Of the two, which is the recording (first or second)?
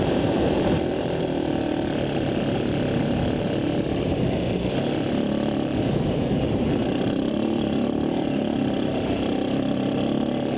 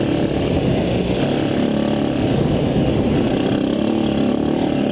second